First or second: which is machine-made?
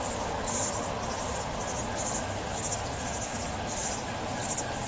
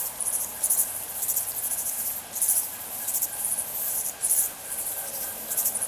second